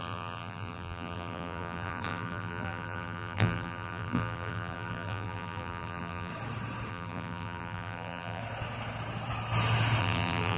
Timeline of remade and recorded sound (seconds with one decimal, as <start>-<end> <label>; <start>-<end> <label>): 0.0-6.3 remade; 6.3-6.9 recorded; 6.9-8.4 remade; 8.4-10.0 recorded; 10.0-10.6 remade